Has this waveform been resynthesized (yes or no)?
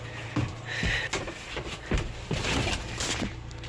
no